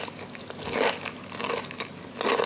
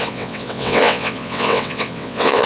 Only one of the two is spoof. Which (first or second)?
second